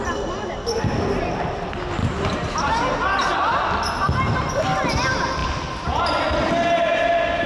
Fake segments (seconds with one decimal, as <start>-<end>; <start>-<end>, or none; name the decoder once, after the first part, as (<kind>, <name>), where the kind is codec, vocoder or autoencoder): 2.0-4.5 (vocoder, BigVGAN v2)